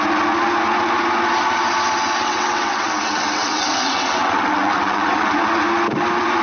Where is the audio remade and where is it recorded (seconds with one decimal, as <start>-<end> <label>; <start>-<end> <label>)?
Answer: 0.0-2.2 recorded; 2.2-5.5 remade; 5.5-6.4 recorded